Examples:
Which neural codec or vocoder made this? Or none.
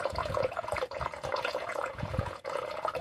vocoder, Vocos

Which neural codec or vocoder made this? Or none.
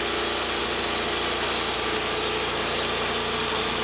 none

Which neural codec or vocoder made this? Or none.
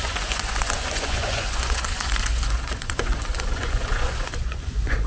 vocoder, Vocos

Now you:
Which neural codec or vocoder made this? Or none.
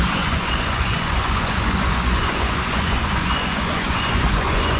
vocoder, Vocos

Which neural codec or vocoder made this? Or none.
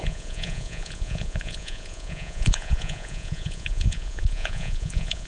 vocoder, Vocos